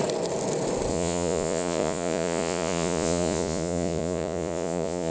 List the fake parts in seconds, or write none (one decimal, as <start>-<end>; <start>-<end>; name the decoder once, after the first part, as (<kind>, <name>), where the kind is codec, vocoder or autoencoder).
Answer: 0.9-5.1 (vocoder, Vocos)